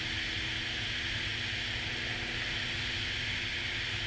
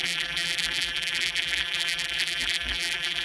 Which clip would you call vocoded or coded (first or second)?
second